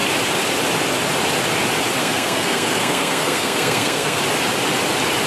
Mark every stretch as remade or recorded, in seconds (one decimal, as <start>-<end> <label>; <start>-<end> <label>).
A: 0.0-2.0 recorded; 2.0-4.2 remade; 4.2-5.3 recorded